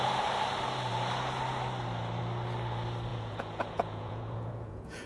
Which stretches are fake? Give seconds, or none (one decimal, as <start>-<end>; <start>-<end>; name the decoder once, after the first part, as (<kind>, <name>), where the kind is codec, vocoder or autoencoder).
3.1-5.1 (vocoder, Vocos)